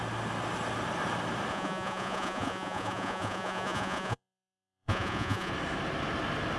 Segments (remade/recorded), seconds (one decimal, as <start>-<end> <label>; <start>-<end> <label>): 0.0-1.5 recorded; 1.5-5.5 remade; 5.5-6.6 recorded